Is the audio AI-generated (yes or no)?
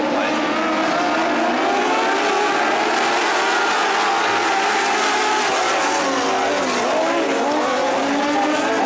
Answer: no